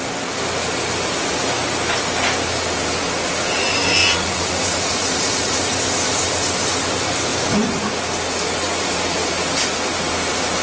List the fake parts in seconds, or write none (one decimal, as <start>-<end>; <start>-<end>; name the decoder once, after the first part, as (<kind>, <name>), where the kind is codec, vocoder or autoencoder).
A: 4.0-5.6 (vocoder, Vocos)